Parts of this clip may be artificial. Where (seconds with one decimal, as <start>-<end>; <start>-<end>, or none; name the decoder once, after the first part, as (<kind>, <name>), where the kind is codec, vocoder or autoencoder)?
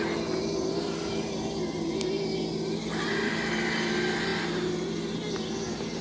none